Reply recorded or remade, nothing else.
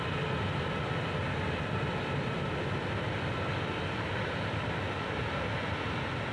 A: recorded